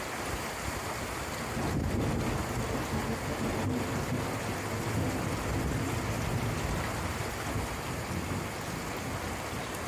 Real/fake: real